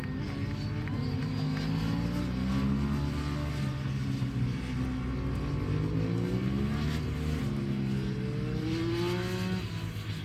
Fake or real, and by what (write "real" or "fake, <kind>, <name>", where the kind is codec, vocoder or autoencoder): real